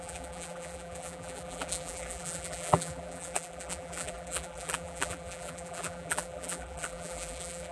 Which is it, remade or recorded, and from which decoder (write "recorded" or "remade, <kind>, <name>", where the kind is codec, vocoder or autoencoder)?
remade, vocoder, BigVGAN v2